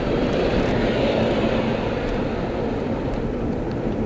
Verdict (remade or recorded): remade